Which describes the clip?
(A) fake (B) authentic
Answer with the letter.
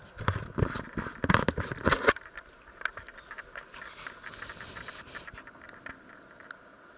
B